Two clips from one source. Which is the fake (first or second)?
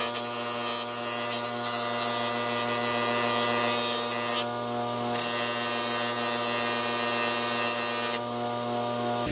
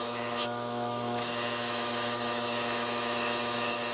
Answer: second